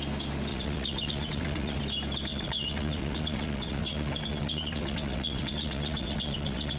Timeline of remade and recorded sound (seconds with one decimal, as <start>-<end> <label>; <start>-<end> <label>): 0.0-0.5 recorded; 0.5-1.8 remade; 1.8-2.3 recorded; 2.3-6.8 remade